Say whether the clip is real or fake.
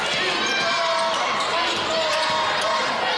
real